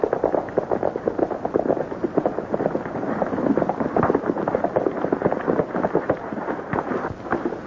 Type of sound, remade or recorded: recorded